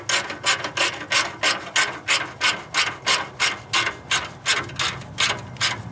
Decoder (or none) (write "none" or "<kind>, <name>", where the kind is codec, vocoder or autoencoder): none